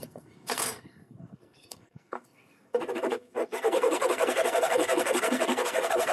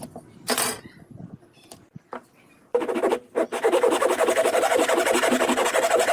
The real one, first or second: second